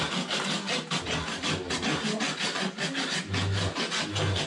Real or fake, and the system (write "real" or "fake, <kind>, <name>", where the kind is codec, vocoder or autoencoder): real